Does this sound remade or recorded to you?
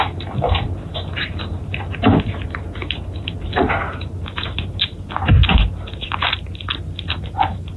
recorded